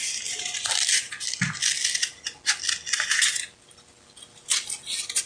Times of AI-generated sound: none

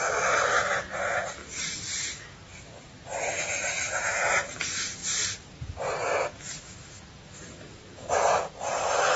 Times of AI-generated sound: none

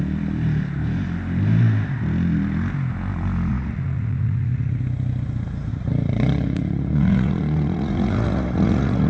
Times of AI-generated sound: 3.5-4.8 (vocoder, Vocos); 5.7-9.1

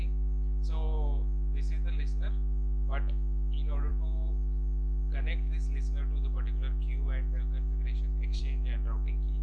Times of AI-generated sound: none